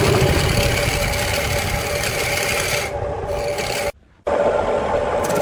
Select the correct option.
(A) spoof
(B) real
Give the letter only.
B